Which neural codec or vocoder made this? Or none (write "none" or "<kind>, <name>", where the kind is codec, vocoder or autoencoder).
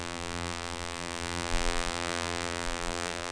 vocoder, BigVGAN v2